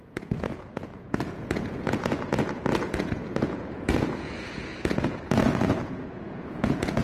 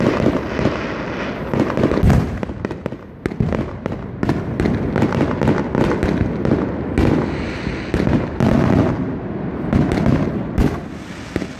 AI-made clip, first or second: first